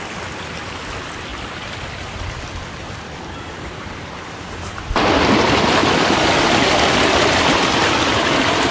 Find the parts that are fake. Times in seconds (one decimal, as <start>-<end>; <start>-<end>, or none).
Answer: none